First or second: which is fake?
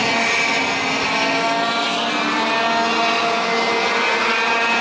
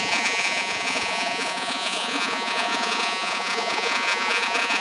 second